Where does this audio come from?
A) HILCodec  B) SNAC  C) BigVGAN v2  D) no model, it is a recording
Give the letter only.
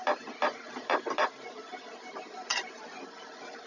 C